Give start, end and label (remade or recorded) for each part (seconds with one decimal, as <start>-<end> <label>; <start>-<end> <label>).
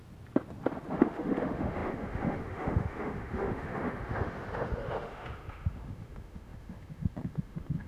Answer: 0.0-0.9 recorded; 0.9-7.9 remade